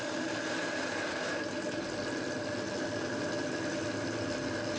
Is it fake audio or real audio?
real